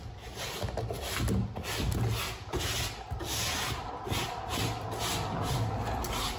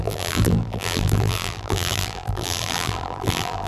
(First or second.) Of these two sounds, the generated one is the second